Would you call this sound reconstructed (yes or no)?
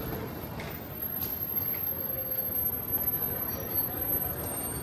no